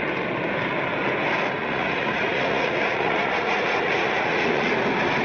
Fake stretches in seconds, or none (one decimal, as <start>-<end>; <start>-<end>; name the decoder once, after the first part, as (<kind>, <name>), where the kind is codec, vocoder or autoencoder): 1.6-4.7 (vocoder, Vocos)